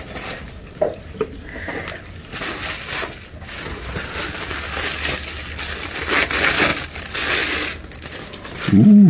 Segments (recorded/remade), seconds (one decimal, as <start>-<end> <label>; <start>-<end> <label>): 0.0-9.1 recorded